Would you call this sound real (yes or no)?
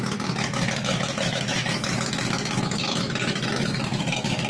no